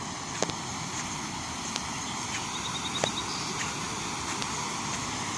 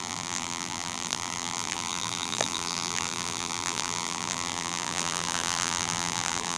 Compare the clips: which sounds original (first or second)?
first